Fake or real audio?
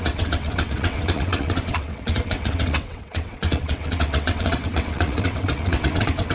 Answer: fake